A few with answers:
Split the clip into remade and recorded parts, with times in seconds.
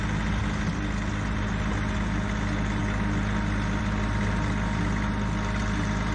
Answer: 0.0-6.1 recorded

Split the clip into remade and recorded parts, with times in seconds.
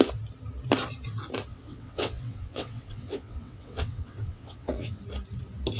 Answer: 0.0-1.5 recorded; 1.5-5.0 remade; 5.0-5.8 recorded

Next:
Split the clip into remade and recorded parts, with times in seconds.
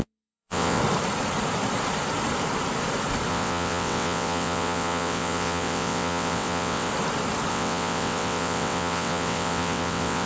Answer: 0.0-0.8 remade; 0.8-3.3 recorded; 3.3-6.9 remade; 6.9-7.5 recorded; 7.5-10.3 remade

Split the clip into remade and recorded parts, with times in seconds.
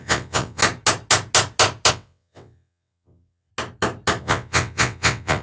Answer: 0.0-0.6 remade; 0.6-1.9 recorded; 1.9-3.5 remade; 3.5-4.2 recorded; 4.2-5.4 remade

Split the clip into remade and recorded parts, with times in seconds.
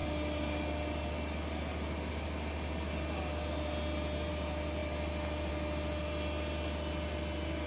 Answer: 0.0-7.7 recorded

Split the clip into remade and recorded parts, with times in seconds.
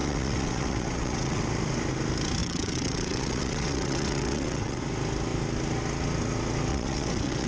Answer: 0.0-1.4 remade; 1.4-2.4 recorded; 2.4-4.8 remade; 4.8-6.7 recorded; 6.7-7.5 remade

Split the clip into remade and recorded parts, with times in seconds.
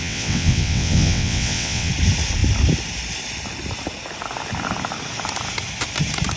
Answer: 0.0-1.9 remade; 1.9-6.4 recorded